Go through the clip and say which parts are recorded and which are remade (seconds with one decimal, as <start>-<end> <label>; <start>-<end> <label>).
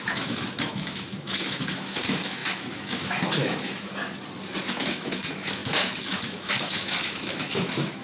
0.0-4.0 remade; 4.0-4.7 recorded; 4.7-8.0 remade